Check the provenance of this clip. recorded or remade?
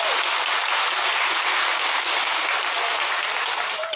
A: recorded